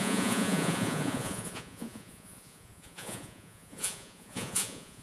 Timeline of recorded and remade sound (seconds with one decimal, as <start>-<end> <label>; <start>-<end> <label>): 0.0-5.0 remade